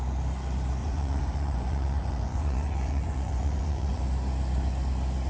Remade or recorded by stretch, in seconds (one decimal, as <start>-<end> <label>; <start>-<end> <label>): 0.0-0.8 recorded; 0.8-4.0 remade; 4.0-5.3 recorded